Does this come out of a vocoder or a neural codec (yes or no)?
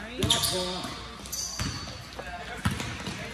no